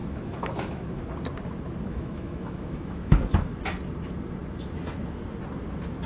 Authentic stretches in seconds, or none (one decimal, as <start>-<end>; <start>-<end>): 1.0-1.9; 3.3-6.1